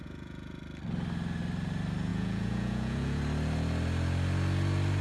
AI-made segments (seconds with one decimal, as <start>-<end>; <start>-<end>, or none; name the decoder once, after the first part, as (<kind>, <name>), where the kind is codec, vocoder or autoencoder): 0.0-0.6 (vocoder, Vocos); 2.1-3.2

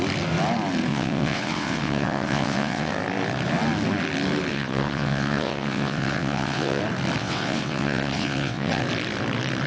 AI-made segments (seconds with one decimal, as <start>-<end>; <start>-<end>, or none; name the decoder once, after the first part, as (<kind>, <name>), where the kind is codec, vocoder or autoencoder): 0.9-2.9 (vocoder, WaveNeXt); 4.5-6.8; 7.2-8.8

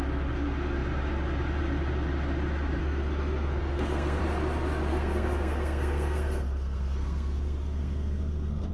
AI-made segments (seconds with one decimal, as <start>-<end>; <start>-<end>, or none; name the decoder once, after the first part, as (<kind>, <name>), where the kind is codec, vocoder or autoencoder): 2.8-4.2 (codec, SNAC); 4.9-8.7

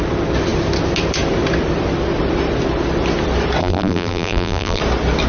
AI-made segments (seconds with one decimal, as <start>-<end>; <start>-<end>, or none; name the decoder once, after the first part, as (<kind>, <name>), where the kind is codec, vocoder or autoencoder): 3.6-4.8 (vocoder, BigVGAN v2)

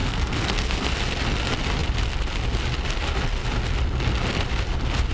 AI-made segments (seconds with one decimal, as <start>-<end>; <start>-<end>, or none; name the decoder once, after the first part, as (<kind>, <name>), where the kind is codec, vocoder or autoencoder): 0.0-0.9 (codec, SNAC)